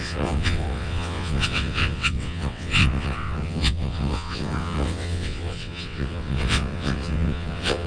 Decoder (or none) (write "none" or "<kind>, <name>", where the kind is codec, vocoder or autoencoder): vocoder, WaveNeXt